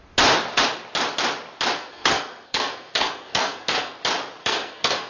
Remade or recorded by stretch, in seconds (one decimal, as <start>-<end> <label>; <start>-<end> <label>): 0.0-1.8 recorded; 1.8-4.0 remade; 4.0-4.4 recorded; 4.4-5.1 remade